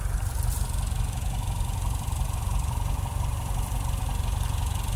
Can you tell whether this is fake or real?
real